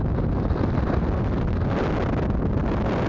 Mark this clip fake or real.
real